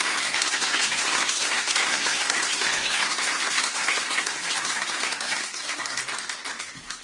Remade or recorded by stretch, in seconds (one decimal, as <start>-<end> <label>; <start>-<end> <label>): 0.0-6.0 remade; 6.0-6.6 recorded; 6.6-7.0 remade